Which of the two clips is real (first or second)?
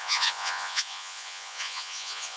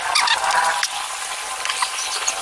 second